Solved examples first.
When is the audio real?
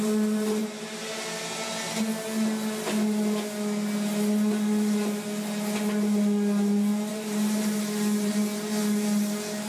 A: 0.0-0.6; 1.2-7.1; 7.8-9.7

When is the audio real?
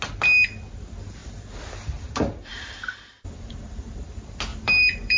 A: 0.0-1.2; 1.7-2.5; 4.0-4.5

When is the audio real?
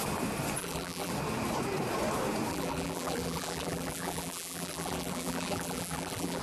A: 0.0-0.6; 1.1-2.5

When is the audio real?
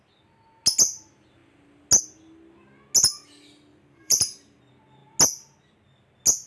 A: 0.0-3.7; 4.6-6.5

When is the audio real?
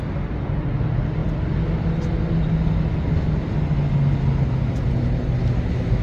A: 0.0-6.0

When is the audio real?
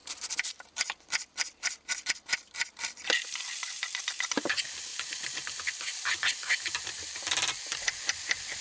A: 4.0-4.9; 6.8-8.6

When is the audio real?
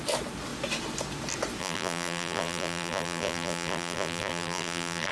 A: 0.0-1.6